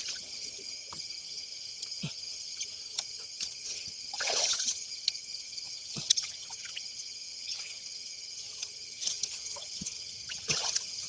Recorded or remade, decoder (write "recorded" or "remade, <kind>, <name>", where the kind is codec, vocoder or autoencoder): remade, vocoder, HiFi-GAN